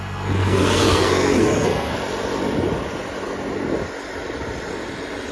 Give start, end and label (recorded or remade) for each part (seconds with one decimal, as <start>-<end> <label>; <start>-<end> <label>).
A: 0.0-1.9 remade; 1.9-5.3 recorded